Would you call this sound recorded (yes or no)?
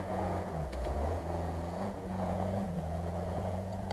no